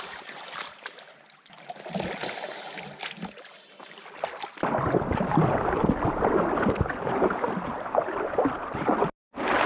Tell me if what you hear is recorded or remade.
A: recorded